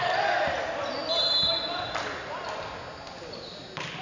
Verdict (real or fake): real